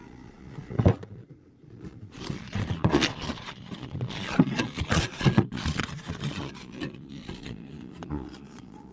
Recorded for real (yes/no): no